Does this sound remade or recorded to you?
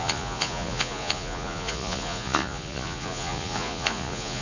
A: remade